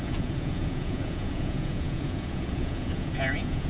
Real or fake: fake